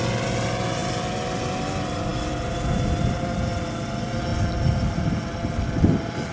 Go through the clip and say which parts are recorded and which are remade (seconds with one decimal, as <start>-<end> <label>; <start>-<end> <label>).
0.0-6.3 recorded